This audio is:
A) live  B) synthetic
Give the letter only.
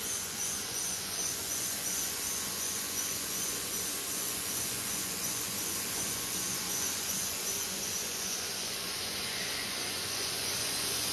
B